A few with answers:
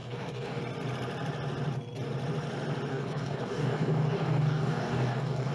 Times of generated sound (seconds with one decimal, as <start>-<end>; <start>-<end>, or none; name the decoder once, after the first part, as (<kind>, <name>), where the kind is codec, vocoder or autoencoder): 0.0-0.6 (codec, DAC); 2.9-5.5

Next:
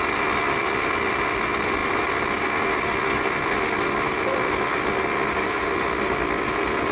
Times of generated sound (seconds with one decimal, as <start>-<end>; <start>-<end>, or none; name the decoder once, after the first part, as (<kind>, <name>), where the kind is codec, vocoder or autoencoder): none

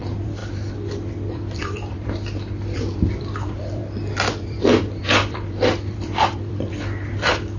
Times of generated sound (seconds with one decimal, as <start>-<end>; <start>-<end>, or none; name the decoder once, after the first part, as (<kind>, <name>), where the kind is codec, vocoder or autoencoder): 0.0-0.4 (vocoder, BigVGAN v2); 1.1-3.8; 4.4-7.6

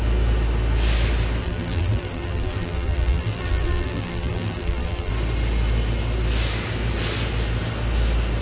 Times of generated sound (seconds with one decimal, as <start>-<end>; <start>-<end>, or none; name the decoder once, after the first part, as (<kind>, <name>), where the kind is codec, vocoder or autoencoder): 1.4-5.1 (vocoder, BigVGAN v2)

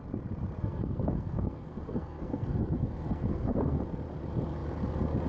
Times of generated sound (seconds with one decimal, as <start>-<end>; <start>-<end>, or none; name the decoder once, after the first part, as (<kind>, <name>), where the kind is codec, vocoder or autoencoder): 0.6-3.8 (codec, SNAC)

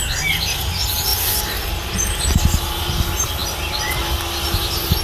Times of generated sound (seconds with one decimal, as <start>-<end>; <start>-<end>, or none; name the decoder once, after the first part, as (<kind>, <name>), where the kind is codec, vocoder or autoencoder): none

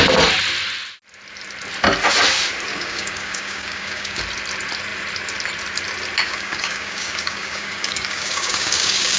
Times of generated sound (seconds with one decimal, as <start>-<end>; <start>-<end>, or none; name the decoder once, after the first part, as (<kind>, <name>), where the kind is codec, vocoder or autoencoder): 2.7-4.2 (codec, DAC); 6.2-9.2

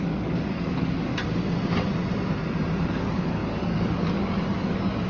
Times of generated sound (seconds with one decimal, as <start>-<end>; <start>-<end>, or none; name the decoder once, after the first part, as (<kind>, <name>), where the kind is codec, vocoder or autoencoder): 0.0-1.1 (codec, DAC); 2.9-5.1